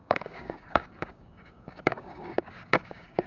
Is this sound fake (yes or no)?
yes